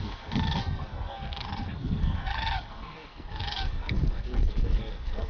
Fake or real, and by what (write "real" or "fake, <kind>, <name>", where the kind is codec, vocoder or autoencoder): fake, codec, SNAC